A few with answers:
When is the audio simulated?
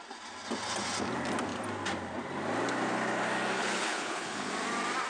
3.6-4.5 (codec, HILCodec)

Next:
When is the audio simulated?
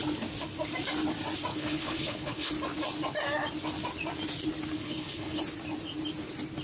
1.5-2.5 (codec, HILCodec); 4.8-5.4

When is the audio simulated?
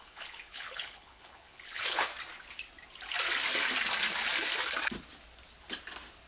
0.0-2.1 (codec, HILCodec)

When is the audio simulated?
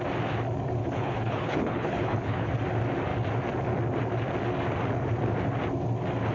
0.8-2.5 (codec, HILCodec)